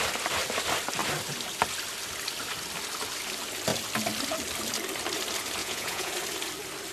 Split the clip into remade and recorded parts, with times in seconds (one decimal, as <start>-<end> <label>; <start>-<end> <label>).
0.0-5.6 recorded; 5.6-6.1 remade; 6.1-6.9 recorded